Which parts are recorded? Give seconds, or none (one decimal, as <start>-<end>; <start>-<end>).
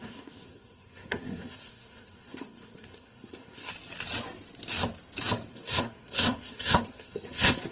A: 3.7-5.5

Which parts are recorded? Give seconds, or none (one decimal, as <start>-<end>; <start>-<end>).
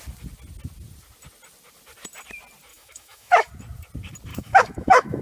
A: 0.0-2.7; 3.5-4.3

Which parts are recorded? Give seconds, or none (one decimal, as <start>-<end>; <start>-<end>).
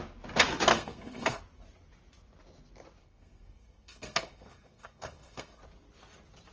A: 0.0-0.7; 1.4-3.0; 5.6-6.5